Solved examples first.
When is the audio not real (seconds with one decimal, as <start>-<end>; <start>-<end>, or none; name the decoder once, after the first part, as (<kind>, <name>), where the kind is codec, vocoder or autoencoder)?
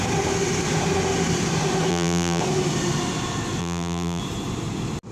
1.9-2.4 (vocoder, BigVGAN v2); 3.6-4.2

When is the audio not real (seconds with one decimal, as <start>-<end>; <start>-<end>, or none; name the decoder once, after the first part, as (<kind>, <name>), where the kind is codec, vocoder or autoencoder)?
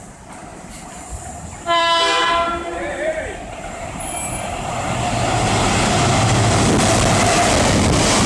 0.5-4.0 (vocoder, BigVGAN v2)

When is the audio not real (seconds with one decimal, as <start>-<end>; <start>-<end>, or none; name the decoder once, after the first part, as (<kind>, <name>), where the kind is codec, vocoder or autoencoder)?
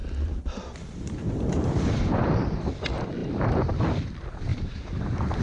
0.0-2.7 (vocoder, BigVGAN v2); 3.2-3.8; 4.5-5.4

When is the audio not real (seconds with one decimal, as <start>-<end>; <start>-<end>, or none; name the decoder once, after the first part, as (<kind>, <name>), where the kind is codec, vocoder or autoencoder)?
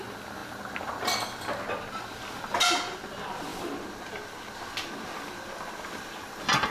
none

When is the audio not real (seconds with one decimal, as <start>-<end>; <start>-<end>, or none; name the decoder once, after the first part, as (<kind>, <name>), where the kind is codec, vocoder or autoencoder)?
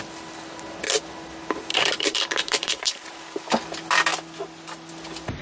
1.7-3.2 (vocoder, BigVGAN v2)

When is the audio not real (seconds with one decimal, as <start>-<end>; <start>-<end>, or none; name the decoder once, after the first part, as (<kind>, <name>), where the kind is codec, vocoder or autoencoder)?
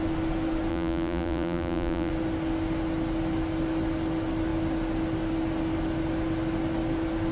0.7-2.1 (vocoder, BigVGAN v2)